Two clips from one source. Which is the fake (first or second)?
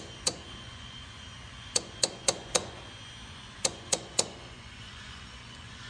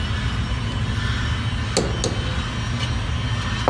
first